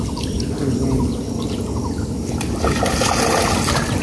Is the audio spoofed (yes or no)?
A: no